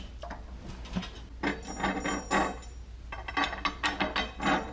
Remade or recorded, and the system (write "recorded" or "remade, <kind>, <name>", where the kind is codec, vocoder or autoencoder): recorded